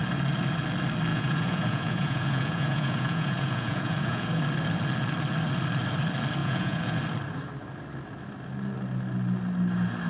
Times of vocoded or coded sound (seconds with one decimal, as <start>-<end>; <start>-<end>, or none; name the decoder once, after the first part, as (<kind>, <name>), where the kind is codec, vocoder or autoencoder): 1.1-4.4 (vocoder, Vocos); 6.4-7.0